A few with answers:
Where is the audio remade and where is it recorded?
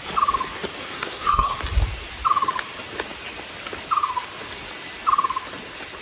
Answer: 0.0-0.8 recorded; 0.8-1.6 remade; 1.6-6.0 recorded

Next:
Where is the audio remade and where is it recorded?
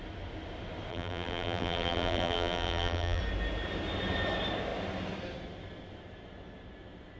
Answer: 0.0-0.9 recorded; 0.9-3.2 remade; 3.2-7.2 recorded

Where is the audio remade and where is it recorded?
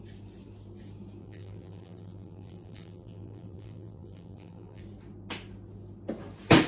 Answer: 0.0-1.2 recorded; 1.2-4.8 remade; 4.8-6.7 recorded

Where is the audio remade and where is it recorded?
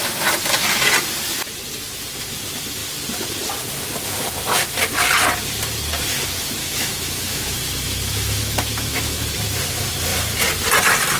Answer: 0.0-6.6 recorded; 6.6-9.4 remade; 9.4-11.2 recorded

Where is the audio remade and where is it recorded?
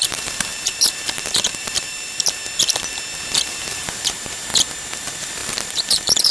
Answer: 0.0-2.4 remade; 2.4-3.3 recorded; 3.3-4.5 remade; 4.5-5.0 recorded; 5.0-6.3 remade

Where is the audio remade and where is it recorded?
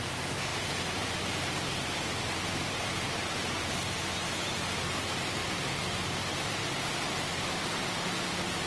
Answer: 0.0-8.7 recorded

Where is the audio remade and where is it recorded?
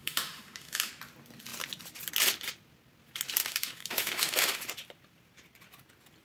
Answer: 0.0-0.9 remade; 0.9-3.4 recorded; 3.4-4.6 remade; 4.6-6.2 recorded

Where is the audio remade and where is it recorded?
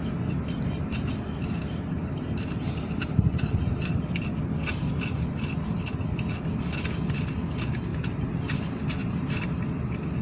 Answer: 0.0-1.4 recorded; 1.4-4.2 remade; 4.2-7.9 recorded; 7.9-8.6 remade; 8.6-9.0 recorded; 9.0-9.6 remade; 9.6-10.2 recorded